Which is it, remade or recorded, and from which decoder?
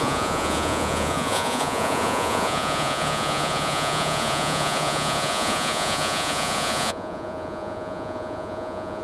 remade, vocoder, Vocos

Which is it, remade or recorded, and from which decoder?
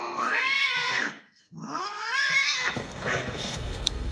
remade, codec, SNAC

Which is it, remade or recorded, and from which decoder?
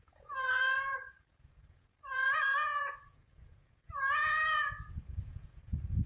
remade, vocoder, Vocos